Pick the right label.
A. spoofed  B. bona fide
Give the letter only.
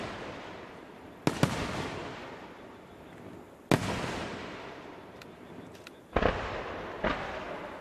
B